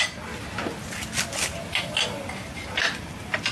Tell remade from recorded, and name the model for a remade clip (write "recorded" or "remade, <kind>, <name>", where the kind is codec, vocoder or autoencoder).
recorded